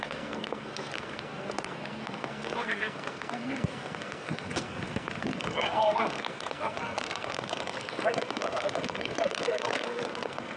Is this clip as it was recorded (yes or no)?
no